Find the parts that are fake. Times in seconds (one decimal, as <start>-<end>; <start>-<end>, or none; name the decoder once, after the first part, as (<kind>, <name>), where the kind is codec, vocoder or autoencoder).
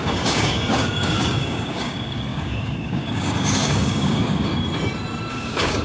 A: 0.0-4.5 (codec, DAC); 5.3-5.8